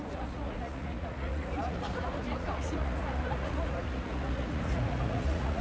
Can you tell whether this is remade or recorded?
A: remade